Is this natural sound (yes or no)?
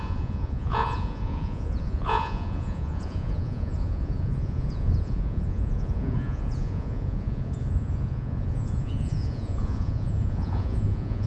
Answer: no